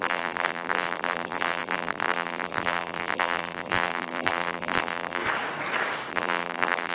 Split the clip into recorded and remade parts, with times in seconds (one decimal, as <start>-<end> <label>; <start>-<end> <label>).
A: 0.0-5.2 remade; 5.2-6.1 recorded; 6.1-6.9 remade